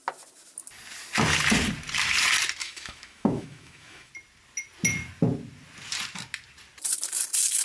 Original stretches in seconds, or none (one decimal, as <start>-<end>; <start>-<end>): 0.0-2.6; 4.1-7.6